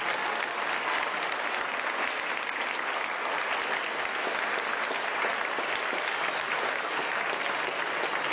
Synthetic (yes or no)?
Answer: no